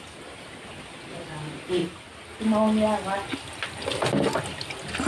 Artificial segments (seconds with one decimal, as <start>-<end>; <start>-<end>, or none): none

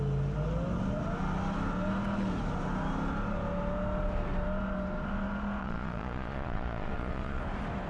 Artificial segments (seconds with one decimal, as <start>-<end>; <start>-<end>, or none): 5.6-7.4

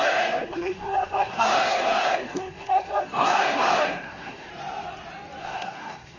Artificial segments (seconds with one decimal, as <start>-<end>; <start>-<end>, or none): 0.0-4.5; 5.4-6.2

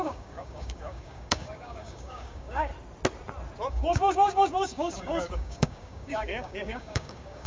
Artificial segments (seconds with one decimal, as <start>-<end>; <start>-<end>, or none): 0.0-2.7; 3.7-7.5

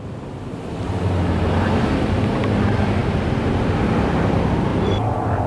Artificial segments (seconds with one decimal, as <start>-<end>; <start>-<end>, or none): none

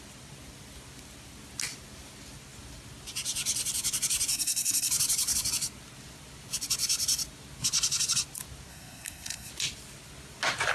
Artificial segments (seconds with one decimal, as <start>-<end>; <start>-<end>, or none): 4.3-4.9; 8.7-9.5

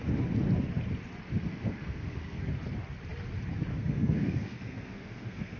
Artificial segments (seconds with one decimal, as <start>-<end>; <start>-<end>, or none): 1.5-2.4; 3.7-5.6